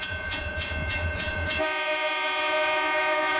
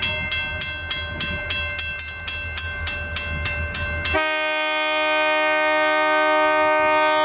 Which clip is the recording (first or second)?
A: second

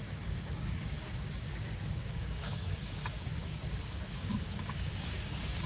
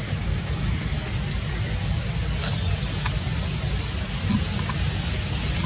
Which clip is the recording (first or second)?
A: second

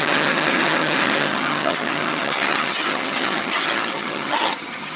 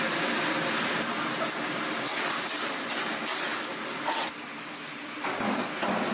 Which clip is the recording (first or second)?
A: second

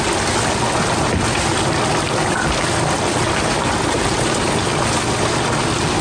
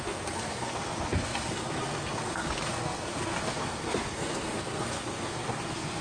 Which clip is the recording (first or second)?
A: first